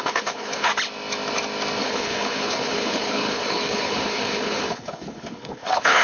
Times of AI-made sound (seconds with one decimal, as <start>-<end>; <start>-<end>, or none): 0.0-0.7; 1.8-6.0